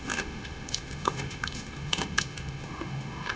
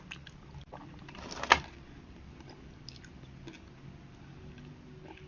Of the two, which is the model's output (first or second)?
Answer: first